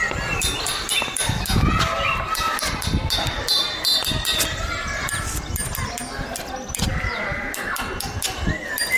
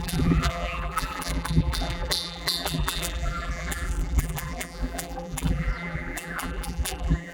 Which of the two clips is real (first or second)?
first